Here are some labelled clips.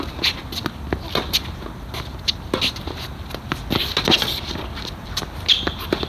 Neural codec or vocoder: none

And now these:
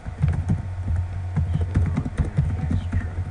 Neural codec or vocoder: none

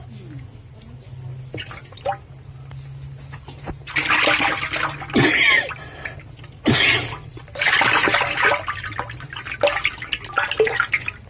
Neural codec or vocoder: none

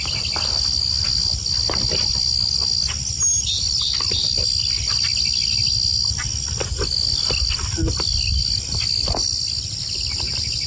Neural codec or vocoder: none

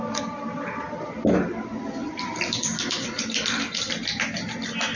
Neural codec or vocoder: none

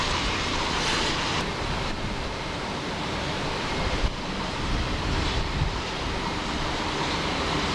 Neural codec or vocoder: vocoder, BigVGAN v2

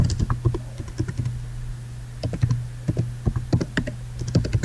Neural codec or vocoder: none